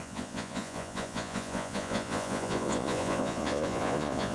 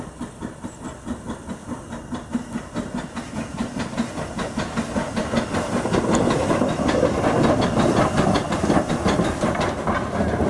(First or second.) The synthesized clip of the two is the first